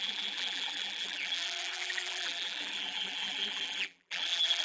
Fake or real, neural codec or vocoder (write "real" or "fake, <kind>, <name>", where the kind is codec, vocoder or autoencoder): fake, vocoder, BigVGAN v2